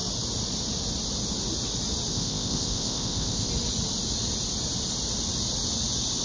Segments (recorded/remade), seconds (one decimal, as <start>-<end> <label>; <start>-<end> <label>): 0.0-2.1 recorded; 2.1-3.5 remade; 3.5-6.2 recorded